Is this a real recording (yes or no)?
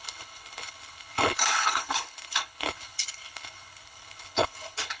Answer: no